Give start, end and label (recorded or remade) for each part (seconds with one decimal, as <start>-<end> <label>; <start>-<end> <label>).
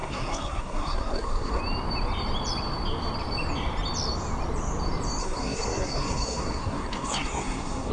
0.0-1.6 remade; 1.6-5.2 recorded; 5.2-7.9 remade